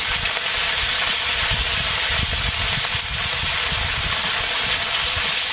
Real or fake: real